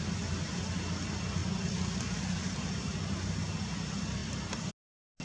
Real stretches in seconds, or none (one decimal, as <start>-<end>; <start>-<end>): 0.0-4.2; 4.7-5.2